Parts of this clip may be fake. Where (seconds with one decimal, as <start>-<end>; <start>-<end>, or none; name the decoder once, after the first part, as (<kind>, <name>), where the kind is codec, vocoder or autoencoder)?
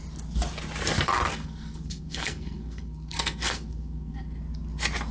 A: 1.3-4.4 (codec, SNAC)